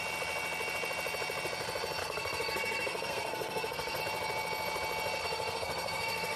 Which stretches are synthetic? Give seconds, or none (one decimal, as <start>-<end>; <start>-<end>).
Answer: 2.0-4.0; 5.2-6.4